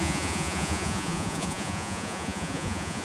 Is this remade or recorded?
remade